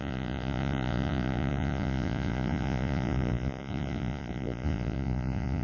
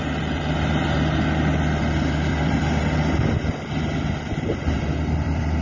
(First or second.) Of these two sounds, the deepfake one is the first